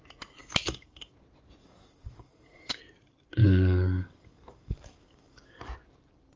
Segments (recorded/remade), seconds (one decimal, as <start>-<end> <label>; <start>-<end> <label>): 0.0-0.4 recorded; 0.4-1.1 remade; 1.1-1.6 recorded; 1.6-2.8 remade; 2.8-3.4 recorded; 3.4-5.7 remade; 5.7-6.4 recorded